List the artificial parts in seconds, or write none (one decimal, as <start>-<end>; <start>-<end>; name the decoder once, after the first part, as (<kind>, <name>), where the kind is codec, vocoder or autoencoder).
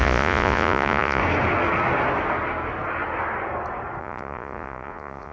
0.0-1.2 (vocoder, Vocos); 4.0-5.3